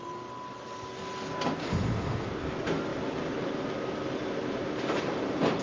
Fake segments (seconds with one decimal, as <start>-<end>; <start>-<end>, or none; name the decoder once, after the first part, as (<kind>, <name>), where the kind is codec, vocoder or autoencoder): 1.6-2.3 (autoencoder, DAC-VAE)